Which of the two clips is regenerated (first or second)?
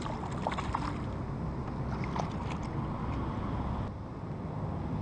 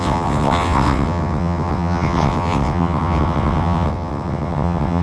second